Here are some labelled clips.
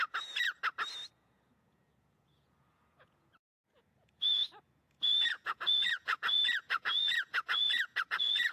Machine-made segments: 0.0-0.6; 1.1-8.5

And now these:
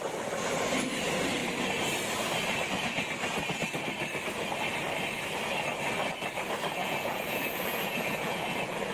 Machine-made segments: 6.8-8.9

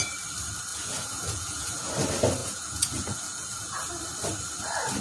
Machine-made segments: 0.7-1.9; 2.4-3.9

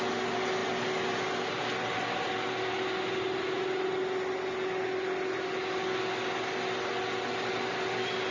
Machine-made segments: none

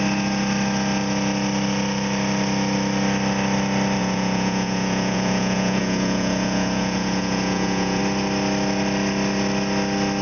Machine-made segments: 4.0-8.0

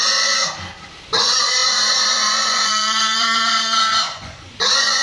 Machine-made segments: 0.0-0.7; 1.2-5.0

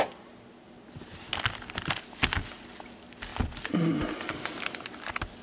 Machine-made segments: none